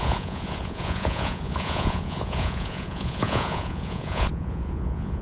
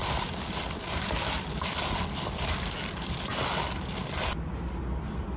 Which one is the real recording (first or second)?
second